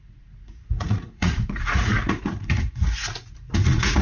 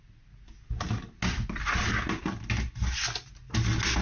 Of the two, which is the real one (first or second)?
second